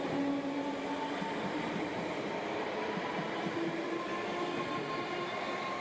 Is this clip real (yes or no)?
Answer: yes